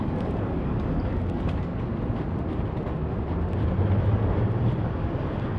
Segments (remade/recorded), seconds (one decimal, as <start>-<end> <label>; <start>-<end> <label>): 0.0-1.7 remade; 1.7-5.1 recorded; 5.1-5.6 remade